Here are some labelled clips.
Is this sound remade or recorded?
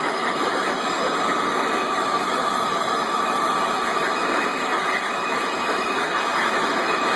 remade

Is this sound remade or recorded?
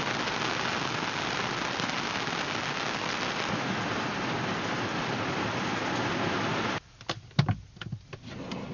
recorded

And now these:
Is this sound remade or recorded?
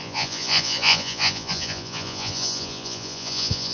remade